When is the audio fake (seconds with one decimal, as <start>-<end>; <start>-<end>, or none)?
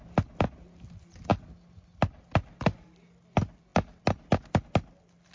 none